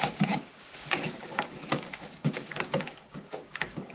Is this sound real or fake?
fake